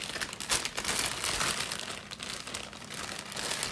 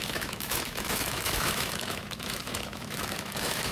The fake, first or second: second